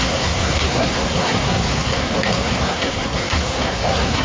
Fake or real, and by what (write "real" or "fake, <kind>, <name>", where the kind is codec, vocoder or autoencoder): fake, codec, SNAC